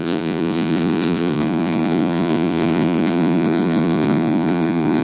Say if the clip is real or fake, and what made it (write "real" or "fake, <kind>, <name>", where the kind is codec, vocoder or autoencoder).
fake, vocoder, Vocos